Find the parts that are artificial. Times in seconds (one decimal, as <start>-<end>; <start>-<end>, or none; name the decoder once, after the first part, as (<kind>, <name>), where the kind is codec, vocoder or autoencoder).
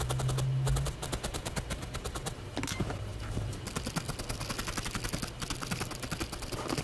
none